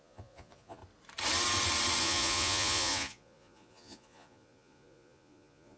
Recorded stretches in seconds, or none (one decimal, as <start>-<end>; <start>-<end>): 0.8-2.0